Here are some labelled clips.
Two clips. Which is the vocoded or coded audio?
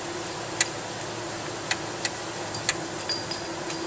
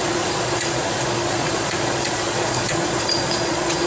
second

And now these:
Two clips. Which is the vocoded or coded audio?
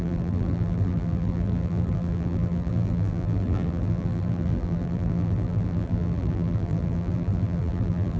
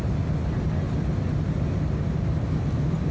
first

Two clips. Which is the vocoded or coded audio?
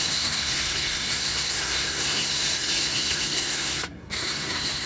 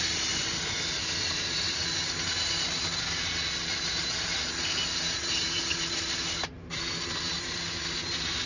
first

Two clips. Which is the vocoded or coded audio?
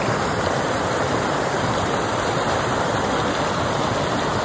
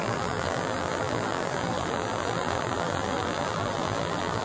second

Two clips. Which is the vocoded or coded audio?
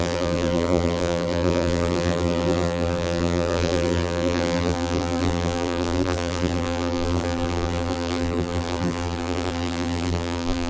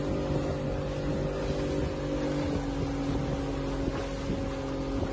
first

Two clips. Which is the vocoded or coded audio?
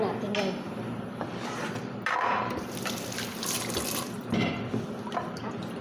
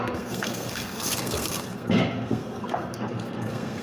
second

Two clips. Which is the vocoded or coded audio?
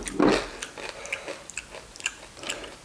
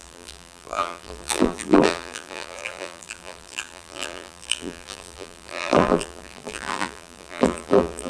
second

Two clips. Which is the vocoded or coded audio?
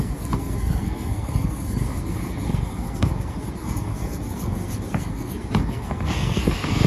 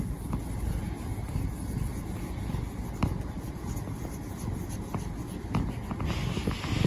first